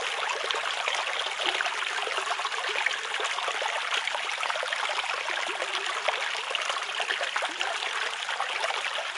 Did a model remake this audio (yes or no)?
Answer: no